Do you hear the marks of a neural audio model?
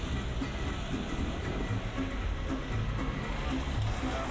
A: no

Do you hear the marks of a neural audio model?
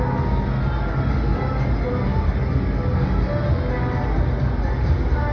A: no